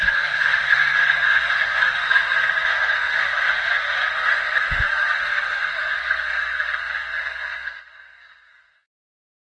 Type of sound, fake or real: fake